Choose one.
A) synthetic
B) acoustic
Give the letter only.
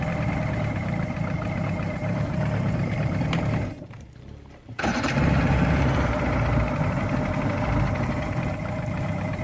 A